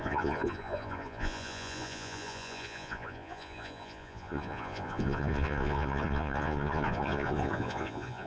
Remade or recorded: remade